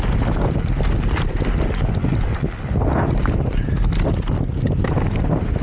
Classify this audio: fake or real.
real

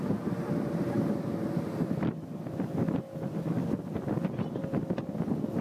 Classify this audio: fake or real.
real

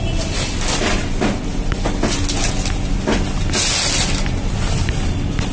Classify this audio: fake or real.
real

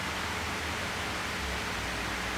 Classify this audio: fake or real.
real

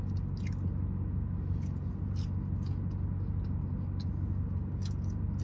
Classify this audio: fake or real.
real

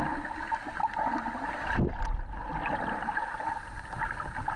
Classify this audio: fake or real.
real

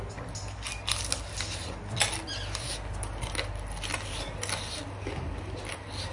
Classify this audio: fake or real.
real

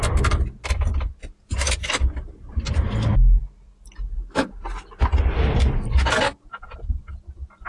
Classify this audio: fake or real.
real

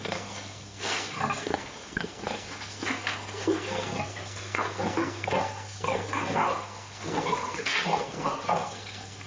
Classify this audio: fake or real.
fake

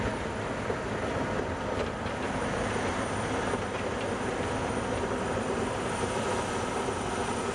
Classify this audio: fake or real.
real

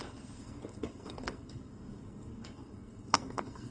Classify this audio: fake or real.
fake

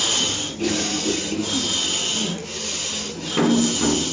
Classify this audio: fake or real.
real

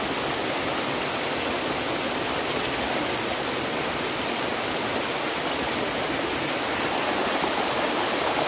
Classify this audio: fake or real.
real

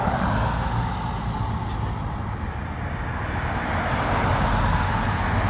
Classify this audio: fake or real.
real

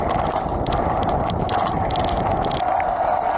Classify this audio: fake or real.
real